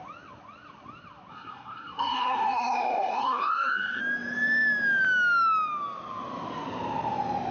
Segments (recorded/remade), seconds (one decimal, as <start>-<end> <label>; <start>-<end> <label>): 0.0-1.3 recorded; 1.3-4.0 remade; 4.0-7.5 recorded